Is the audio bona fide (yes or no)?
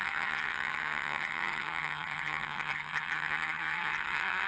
no